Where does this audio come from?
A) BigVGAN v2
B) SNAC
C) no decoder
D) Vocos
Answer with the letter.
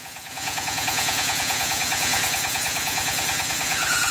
D